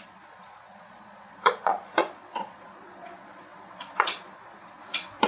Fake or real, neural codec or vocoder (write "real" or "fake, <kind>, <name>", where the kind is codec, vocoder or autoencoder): fake, vocoder, Vocos